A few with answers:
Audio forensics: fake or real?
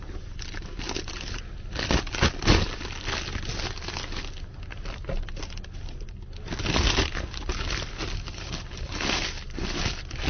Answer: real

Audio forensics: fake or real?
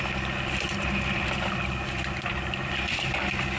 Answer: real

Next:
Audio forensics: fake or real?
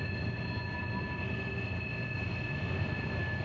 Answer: real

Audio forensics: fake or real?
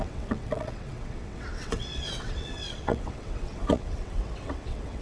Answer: fake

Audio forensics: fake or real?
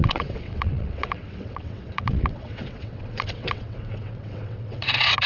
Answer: fake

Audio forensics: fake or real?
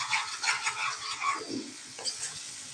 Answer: fake